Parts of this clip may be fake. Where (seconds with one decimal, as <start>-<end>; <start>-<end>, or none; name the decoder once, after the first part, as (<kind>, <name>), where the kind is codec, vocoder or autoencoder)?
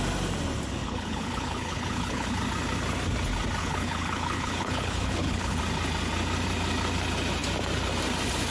0.8-2.4 (codec, HILCodec); 3.6-5.6